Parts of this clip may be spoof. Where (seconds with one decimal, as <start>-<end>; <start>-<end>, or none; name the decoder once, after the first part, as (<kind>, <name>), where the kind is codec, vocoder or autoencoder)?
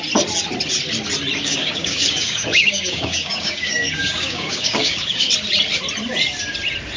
1.4-5.3 (codec, DAC)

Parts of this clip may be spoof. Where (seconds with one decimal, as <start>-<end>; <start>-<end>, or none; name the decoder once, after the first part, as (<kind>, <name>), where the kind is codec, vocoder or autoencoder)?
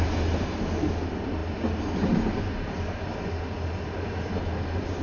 none